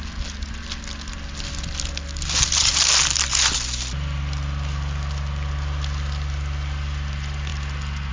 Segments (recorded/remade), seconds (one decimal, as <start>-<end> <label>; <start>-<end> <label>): 0.0-8.1 recorded